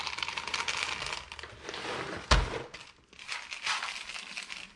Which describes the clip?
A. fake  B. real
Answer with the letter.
B